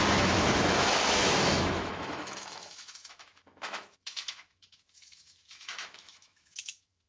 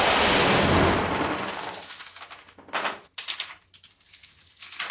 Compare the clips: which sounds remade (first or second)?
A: first